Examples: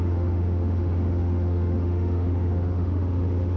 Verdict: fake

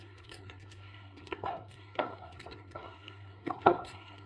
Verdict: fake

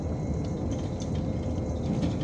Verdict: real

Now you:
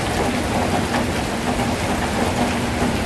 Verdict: real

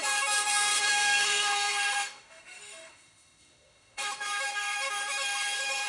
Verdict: fake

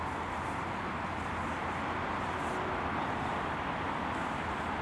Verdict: real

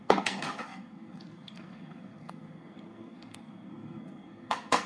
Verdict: fake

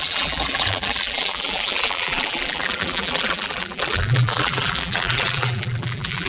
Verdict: fake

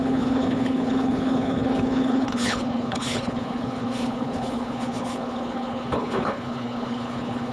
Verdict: fake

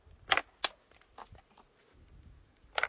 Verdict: real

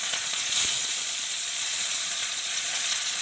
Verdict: fake